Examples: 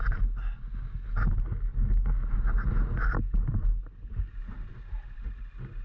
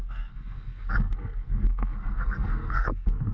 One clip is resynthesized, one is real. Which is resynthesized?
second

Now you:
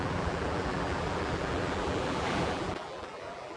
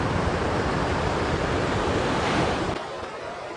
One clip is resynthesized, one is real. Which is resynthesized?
first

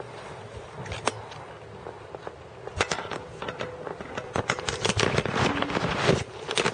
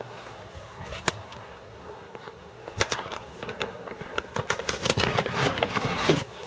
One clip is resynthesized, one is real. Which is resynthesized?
second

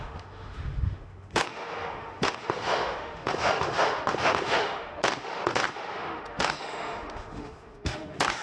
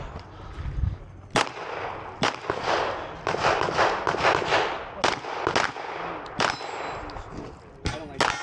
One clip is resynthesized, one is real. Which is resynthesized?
first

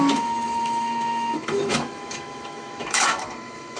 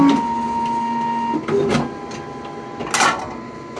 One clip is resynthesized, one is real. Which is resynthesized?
first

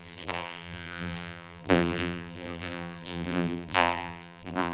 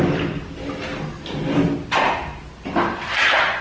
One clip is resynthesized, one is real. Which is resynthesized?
first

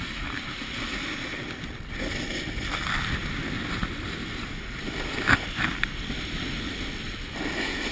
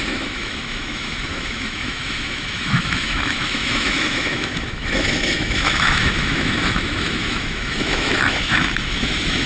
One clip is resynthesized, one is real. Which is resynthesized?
second